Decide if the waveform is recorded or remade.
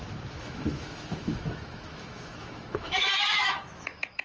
remade